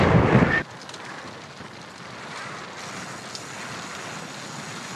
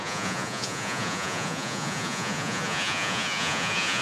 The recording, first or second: first